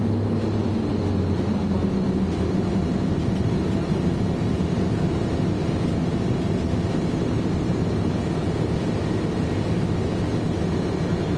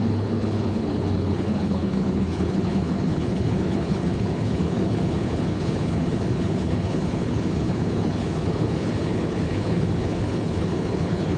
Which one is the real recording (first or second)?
first